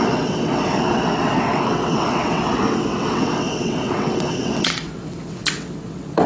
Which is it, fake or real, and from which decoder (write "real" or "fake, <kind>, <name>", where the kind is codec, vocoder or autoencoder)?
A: fake, vocoder, WaveNeXt